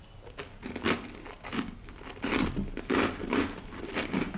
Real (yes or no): yes